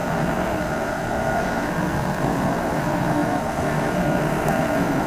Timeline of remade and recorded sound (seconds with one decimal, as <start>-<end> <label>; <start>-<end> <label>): 0.0-5.1 remade